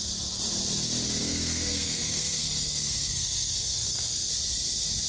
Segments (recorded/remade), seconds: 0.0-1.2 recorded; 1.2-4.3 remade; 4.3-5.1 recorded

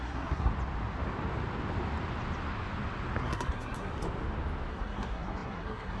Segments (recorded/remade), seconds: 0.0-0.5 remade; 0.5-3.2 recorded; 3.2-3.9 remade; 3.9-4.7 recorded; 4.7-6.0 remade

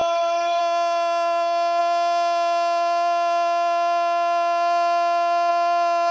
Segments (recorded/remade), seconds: 0.0-0.6 remade; 0.6-6.1 recorded